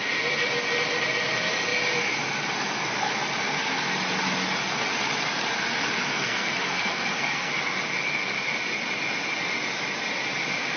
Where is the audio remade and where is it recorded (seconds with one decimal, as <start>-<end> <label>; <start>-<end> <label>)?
0.0-6.1 recorded; 6.1-7.5 remade; 7.5-10.8 recorded

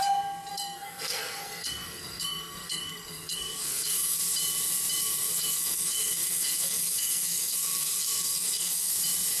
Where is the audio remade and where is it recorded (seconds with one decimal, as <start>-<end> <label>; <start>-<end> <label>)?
0.0-0.5 recorded; 0.5-4.2 remade; 4.2-5.0 recorded; 5.0-8.9 remade; 8.9-9.4 recorded